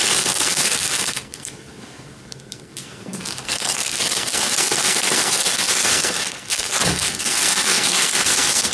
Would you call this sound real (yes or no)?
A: no